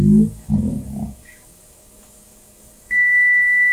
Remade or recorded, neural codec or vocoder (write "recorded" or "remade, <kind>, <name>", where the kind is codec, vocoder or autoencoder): remade, codec, DAC